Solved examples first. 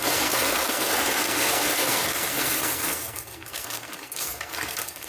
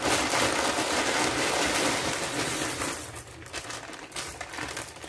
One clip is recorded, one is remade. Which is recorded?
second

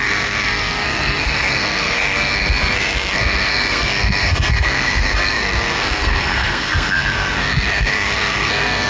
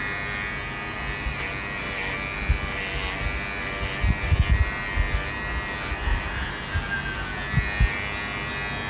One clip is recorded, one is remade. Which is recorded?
second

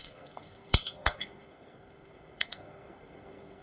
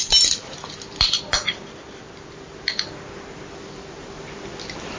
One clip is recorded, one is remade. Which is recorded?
second